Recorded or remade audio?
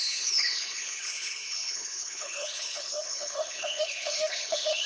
remade